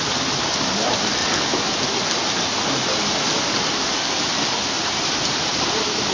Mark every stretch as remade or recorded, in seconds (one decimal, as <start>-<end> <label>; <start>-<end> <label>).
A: 0.0-6.1 recorded